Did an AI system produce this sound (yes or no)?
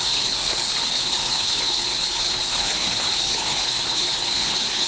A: yes